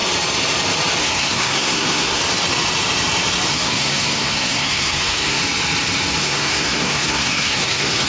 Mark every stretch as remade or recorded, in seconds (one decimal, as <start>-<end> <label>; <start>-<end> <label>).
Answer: 0.0-1.0 recorded; 1.0-2.2 remade; 2.2-3.5 recorded; 3.5-5.4 remade; 5.4-6.2 recorded; 6.2-8.1 remade